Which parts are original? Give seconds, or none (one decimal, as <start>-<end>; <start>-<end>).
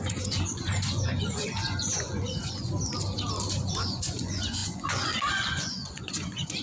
2.7-3.6